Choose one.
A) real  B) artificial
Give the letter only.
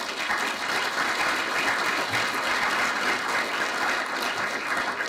A